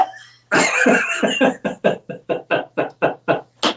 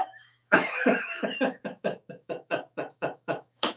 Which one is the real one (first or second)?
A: first